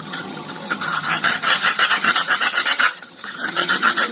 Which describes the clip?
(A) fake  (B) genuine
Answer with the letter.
A